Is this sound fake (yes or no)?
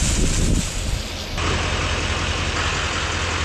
no